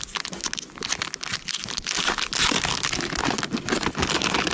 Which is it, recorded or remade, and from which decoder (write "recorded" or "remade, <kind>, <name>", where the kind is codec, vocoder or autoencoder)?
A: recorded